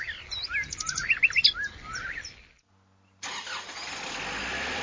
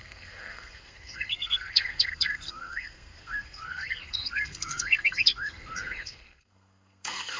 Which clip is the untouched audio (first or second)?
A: first